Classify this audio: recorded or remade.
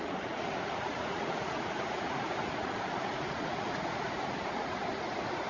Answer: remade